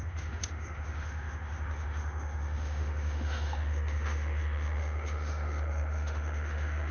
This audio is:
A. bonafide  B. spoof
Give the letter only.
B